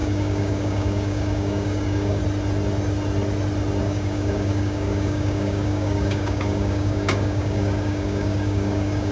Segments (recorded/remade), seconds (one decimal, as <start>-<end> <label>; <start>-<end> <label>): 0.0-2.2 remade; 2.2-3.8 recorded; 3.8-9.1 remade

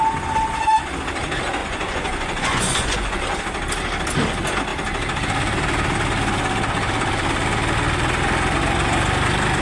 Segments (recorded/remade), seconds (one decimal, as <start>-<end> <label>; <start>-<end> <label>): 0.0-1.6 recorded; 1.6-3.2 remade; 3.2-9.6 recorded

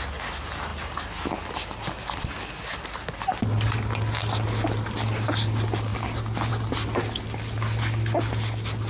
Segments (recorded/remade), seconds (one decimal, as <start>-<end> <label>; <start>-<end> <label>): 0.0-8.9 recorded

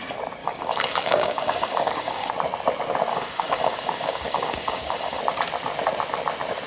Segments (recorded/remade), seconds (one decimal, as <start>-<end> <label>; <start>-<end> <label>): 0.0-0.4 recorded; 0.4-2.3 remade; 2.3-3.1 recorded; 3.1-5.2 remade; 5.2-6.7 recorded

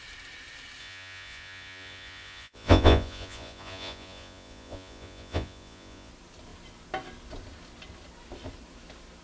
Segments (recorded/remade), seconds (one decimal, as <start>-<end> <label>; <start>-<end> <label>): 0.0-0.8 recorded; 0.8-6.1 remade; 6.1-9.2 recorded

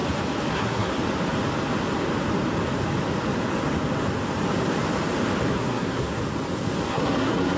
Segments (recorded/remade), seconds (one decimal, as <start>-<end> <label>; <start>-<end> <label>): 0.0-0.5 recorded; 0.5-0.9 remade; 0.9-5.5 recorded; 5.5-6.2 remade; 6.2-6.9 recorded; 6.9-7.6 remade